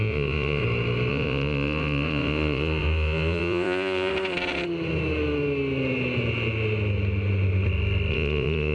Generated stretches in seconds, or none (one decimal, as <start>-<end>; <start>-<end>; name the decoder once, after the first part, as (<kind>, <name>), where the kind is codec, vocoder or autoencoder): 0.0-0.6 (vocoder, Vocos); 1.1-4.1; 8.1-8.7